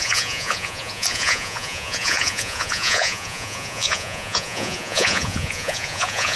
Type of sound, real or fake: fake